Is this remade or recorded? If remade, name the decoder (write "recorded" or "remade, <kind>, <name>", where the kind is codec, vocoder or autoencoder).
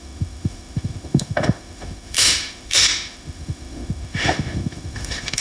remade, autoencoder, DAC-VAE